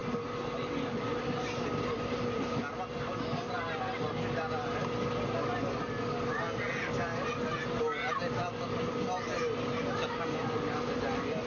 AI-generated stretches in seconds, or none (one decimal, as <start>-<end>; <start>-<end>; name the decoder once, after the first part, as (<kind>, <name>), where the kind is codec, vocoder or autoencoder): none